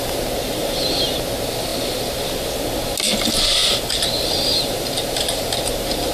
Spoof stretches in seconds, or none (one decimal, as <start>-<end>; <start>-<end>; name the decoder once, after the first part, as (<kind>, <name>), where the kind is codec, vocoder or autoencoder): 3.6-6.1 (vocoder, BigVGAN v2)

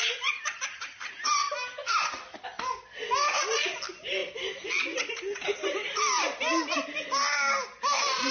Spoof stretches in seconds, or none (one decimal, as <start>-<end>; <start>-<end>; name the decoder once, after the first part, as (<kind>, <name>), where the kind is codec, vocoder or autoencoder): none

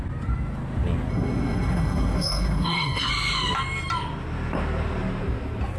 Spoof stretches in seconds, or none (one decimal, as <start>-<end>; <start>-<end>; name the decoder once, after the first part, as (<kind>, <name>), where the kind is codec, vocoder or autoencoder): 1.1-3.1 (codec, SNAC)

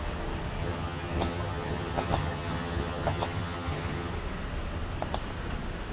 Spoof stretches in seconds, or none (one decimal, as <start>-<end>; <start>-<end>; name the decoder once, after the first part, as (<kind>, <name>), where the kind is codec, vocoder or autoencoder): 0.6-4.1 (vocoder, HiFi-GAN)

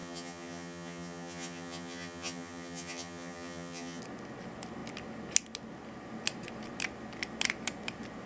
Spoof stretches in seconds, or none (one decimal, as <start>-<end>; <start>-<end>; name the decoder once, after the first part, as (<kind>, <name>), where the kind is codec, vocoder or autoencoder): 0.0-4.0 (vocoder, HiFi-GAN)

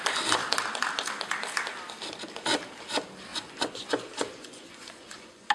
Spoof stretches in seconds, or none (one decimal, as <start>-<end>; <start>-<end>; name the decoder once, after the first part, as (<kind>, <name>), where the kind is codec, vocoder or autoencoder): 3.3-5.5 (vocoder, Vocos)

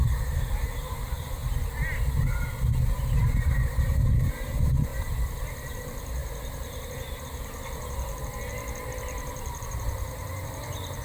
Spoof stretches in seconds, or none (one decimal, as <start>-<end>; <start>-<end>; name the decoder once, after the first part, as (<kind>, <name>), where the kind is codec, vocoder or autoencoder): 0.0-1.4 (vocoder, BigVGAN v2); 3.3-4.9; 5.8-11.0

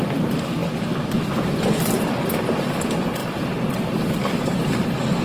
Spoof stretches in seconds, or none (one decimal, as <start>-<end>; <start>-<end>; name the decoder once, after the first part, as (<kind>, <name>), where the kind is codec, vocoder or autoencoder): 0.0-0.6 (vocoder, BigVGAN v2); 2.8-5.2